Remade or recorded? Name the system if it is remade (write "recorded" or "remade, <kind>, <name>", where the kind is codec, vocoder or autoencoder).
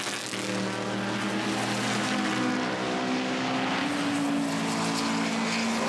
recorded